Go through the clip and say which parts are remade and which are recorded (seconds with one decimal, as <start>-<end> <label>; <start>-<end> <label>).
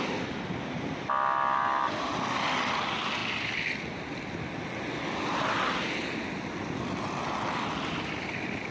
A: 0.0-8.7 recorded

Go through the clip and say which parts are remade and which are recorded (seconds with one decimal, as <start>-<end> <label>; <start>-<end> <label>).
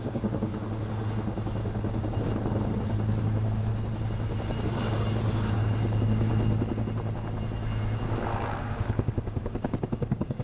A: 0.0-0.5 remade; 0.5-3.2 recorded; 3.2-3.7 remade; 3.7-4.6 recorded; 4.6-6.3 remade; 6.3-8.6 recorded; 8.6-10.4 remade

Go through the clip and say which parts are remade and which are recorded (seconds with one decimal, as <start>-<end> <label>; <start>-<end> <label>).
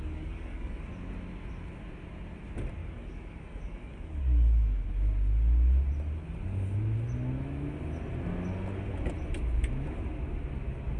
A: 0.0-0.9 remade; 0.9-2.8 recorded; 2.8-4.9 remade; 4.9-11.0 recorded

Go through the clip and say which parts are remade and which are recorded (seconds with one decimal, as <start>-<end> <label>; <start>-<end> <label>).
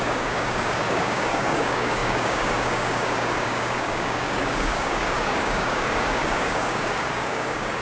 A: 0.0-7.8 remade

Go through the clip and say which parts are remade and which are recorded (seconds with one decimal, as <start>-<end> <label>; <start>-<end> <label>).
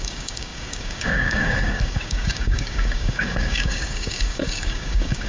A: 0.0-5.3 remade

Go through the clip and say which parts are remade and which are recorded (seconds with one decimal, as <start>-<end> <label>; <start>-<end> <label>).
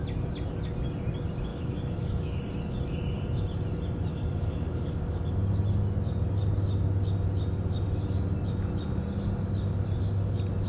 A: 0.0-1.5 recorded; 1.5-2.4 remade; 2.4-4.1 recorded; 4.1-5.3 remade; 5.3-10.7 recorded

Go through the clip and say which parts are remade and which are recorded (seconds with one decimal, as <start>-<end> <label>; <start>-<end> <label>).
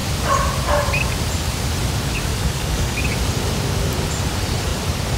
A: 0.0-2.3 recorded; 2.3-3.0 remade; 3.0-5.2 recorded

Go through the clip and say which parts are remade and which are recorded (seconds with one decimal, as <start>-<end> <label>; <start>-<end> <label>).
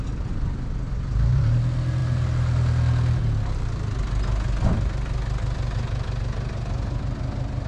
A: 0.0-7.7 recorded